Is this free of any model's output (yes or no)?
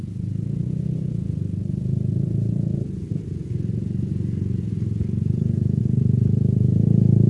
yes